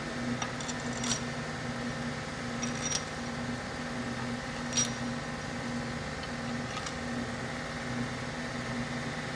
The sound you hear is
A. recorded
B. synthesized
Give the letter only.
A